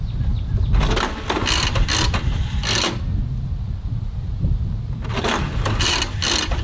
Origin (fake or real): real